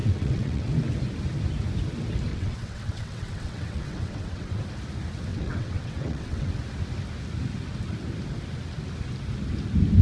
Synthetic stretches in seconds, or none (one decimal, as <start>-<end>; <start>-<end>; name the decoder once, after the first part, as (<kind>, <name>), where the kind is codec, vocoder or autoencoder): 0.0-0.7 (vocoder, WaveNeXt); 2.3-4.6; 5.3-6.5